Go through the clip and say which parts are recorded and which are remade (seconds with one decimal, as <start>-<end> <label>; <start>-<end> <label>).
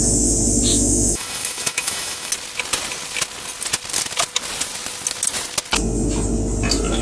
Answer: 0.0-0.7 recorded; 0.7-2.3 remade; 2.3-7.0 recorded